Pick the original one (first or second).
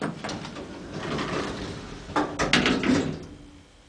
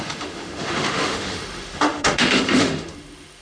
first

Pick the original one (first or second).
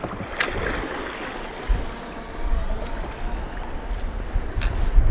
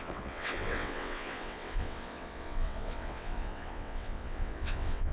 first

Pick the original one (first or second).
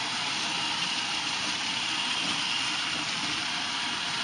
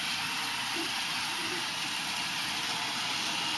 second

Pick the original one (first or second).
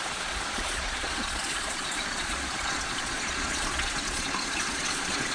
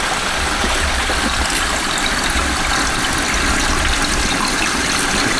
second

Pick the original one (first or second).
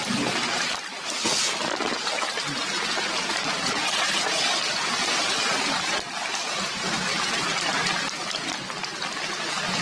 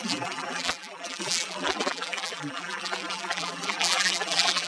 first